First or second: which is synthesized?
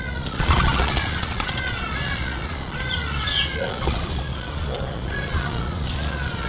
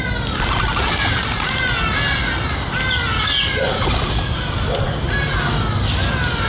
first